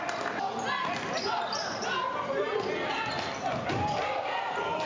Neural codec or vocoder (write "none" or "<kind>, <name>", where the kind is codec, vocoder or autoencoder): none